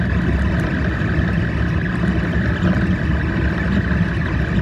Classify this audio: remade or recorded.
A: recorded